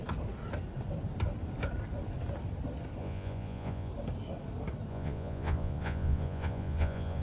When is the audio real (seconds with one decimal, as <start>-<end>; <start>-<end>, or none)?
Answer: 0.0-3.0; 3.9-4.9